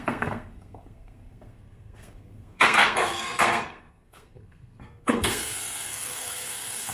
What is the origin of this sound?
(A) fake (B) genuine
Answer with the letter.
A